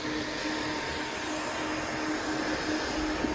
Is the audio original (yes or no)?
yes